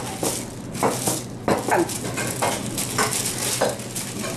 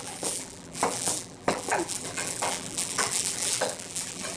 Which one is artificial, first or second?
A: second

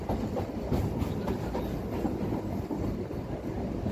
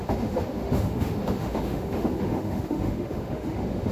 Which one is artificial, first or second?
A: second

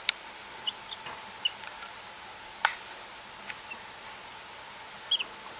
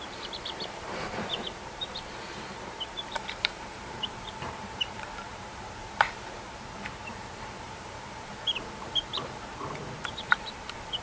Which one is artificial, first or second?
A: second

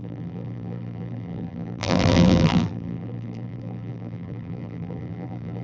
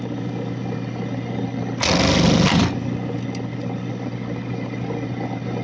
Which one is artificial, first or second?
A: first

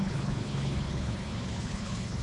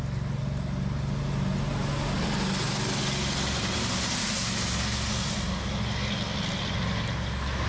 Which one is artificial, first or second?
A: first